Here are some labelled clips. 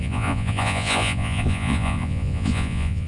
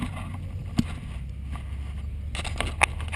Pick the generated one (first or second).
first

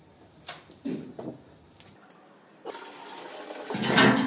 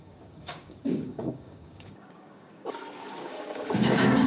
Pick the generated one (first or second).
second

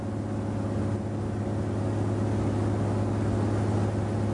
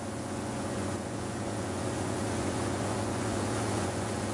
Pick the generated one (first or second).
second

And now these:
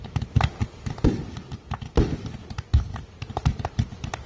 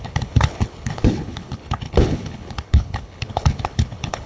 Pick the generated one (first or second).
second